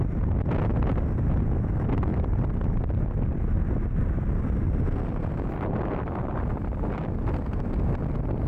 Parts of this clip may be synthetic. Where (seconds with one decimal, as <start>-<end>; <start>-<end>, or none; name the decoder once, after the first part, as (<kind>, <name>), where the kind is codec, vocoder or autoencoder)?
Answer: 2.1-3.6 (vocoder, BigVGAN v2)